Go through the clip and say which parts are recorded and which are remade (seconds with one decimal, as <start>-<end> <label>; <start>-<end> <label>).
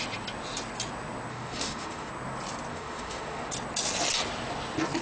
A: 0.0-1.3 recorded; 1.3-2.1 remade; 2.1-2.7 recorded; 2.7-3.5 remade; 3.5-5.0 recorded